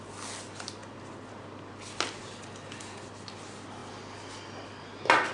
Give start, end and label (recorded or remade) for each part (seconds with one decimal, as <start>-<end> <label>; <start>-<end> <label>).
0.0-5.3 recorded